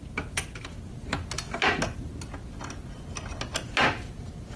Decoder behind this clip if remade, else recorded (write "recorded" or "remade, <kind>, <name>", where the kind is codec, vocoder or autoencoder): recorded